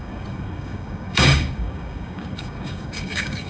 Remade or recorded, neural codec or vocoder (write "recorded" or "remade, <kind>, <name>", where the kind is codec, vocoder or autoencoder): remade, codec, DAC